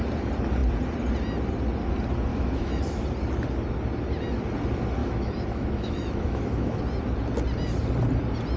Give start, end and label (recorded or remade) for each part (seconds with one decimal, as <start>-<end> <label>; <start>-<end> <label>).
0.0-2.3 recorded; 2.3-3.0 remade; 3.0-5.0 recorded; 5.0-6.8 remade; 6.8-8.6 recorded